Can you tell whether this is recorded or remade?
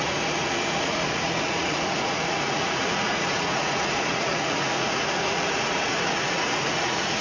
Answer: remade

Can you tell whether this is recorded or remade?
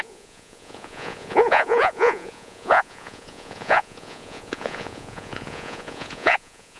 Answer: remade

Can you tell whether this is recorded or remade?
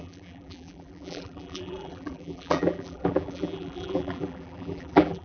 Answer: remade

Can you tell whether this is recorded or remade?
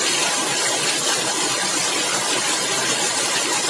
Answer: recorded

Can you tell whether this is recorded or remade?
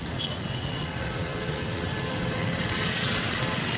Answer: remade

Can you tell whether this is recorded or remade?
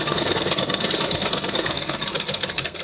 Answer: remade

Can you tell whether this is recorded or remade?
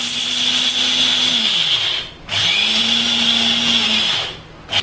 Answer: recorded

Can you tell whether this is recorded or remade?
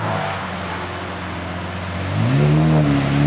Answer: recorded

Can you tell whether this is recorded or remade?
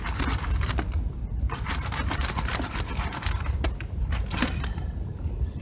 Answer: recorded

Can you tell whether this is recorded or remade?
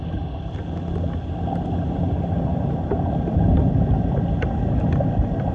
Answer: recorded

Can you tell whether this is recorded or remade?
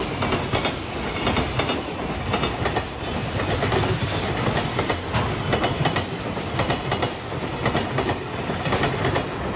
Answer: recorded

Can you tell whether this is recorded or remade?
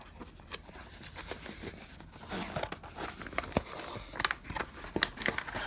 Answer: recorded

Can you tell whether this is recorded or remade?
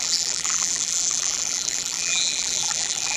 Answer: remade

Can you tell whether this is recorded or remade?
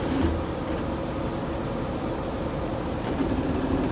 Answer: recorded